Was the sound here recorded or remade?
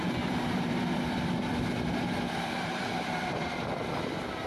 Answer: remade